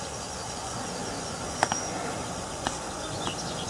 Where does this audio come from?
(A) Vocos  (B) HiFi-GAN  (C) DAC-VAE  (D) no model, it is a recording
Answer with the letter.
A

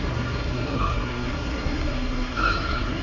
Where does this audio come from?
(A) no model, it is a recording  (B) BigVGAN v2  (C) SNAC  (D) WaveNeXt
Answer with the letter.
C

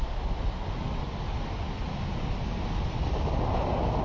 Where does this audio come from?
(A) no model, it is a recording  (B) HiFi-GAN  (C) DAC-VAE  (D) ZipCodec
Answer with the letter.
A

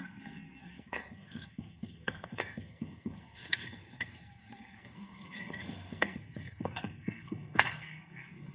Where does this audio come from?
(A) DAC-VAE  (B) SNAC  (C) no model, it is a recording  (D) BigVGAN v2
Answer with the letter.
B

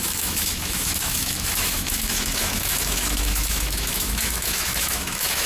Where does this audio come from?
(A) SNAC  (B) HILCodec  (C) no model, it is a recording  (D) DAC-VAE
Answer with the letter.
D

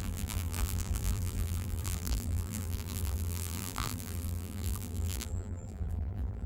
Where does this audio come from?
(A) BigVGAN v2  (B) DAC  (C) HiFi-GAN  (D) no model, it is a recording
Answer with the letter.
A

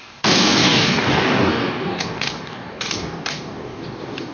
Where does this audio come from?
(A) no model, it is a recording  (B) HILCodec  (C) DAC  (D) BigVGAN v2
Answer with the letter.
C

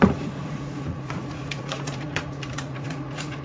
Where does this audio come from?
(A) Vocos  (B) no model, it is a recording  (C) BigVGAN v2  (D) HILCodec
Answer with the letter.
A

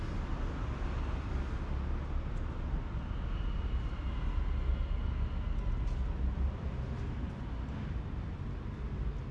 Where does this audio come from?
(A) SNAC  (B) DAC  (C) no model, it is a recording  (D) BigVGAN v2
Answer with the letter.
C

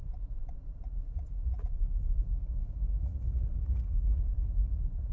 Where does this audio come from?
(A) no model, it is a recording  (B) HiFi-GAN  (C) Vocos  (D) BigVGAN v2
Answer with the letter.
C